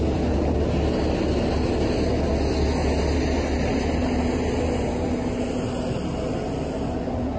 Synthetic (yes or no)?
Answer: no